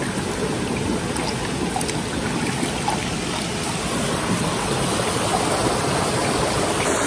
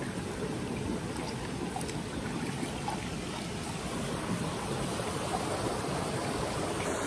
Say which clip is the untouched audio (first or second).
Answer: first